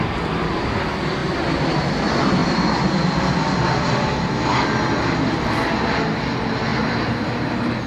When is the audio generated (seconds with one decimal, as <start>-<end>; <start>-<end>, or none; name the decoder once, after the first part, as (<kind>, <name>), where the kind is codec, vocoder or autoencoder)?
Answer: 1.2-1.9 (vocoder, BigVGAN v2); 6.7-7.9